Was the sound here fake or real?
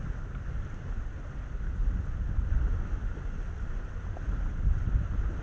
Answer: real